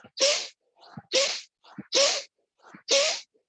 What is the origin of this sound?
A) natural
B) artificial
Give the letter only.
A